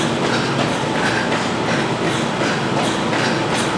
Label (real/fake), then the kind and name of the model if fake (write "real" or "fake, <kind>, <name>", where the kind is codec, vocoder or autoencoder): real